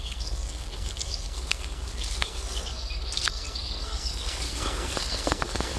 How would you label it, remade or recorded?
remade